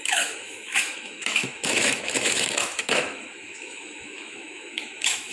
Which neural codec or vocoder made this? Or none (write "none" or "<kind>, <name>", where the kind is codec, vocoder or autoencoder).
autoencoder, DAC-VAE